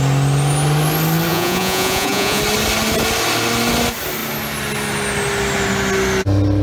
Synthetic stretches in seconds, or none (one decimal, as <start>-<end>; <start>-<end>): 1.3-2.4